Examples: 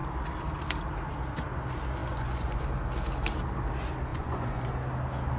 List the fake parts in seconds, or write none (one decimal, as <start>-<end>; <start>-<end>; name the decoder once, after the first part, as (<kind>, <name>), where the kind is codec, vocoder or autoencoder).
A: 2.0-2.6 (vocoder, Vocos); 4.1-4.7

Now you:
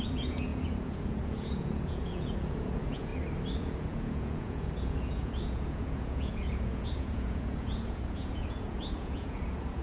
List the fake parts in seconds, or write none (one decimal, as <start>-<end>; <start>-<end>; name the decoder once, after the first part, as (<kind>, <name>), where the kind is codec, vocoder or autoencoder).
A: 0.0-3.1 (vocoder, Vocos); 3.6-9.8

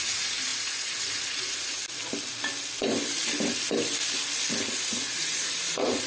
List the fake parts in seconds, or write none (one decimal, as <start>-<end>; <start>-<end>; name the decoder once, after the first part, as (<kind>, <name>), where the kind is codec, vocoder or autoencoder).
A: 0.0-1.8 (vocoder, Vocos); 4.7-6.1